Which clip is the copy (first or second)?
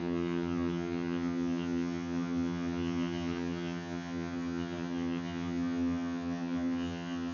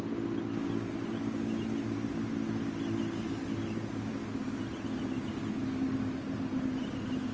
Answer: first